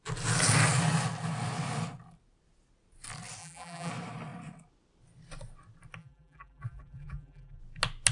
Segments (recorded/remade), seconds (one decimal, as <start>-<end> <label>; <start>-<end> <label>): 0.0-3.4 recorded; 3.4-3.9 remade; 3.9-6.0 recorded; 6.0-7.6 remade; 7.6-8.1 recorded